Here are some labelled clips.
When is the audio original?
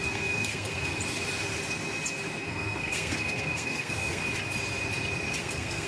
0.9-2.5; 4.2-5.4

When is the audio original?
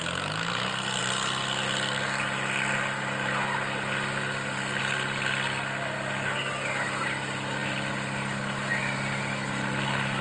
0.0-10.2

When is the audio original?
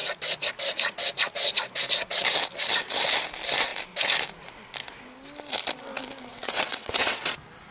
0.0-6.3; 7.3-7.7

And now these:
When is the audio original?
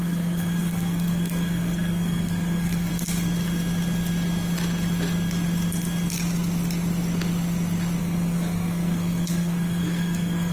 2.9-8.0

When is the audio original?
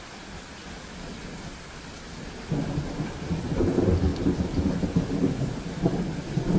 0.0-6.6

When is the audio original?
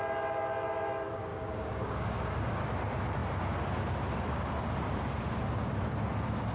0.0-1.3; 2.6-6.5